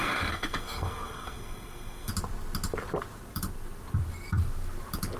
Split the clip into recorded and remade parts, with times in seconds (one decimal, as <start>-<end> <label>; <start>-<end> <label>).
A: 0.0-2.1 remade; 2.1-5.2 recorded